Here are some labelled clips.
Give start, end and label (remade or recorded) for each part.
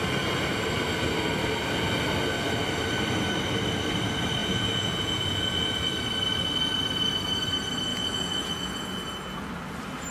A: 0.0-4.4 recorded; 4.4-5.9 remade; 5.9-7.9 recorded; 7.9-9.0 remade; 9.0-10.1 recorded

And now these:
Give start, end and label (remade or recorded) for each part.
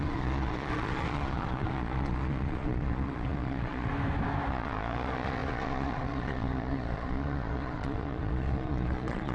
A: 0.0-3.9 remade; 3.9-4.5 recorded; 4.5-9.3 remade